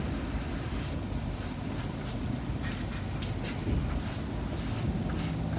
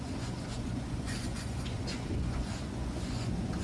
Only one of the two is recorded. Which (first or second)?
first